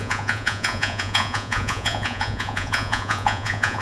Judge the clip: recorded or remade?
remade